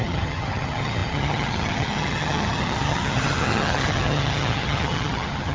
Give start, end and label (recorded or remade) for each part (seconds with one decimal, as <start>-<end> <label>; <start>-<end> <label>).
0.0-5.5 remade